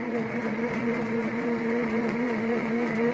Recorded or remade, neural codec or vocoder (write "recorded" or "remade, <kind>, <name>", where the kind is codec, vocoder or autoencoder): remade, vocoder, Vocos